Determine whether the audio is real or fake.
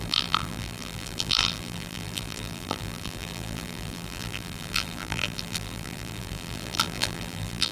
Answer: fake